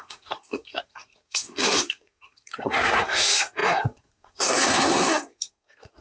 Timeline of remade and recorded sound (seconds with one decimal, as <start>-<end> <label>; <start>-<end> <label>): 0.0-6.0 remade